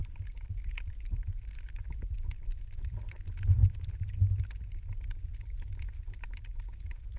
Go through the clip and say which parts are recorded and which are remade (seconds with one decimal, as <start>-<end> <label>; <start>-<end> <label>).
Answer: 0.0-3.6 recorded; 3.6-4.2 remade; 4.2-7.2 recorded